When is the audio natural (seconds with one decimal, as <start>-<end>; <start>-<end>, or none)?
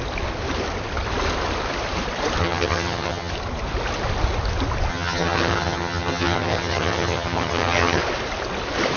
0.0-2.4; 3.3-4.9; 8.0-9.0